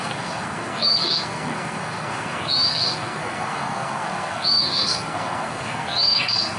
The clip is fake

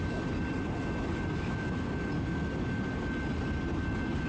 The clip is real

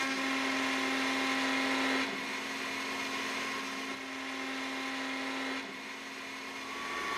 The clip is real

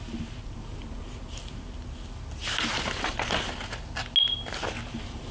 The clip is real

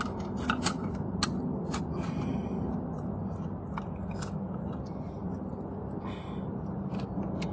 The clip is real